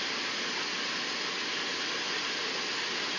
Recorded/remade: recorded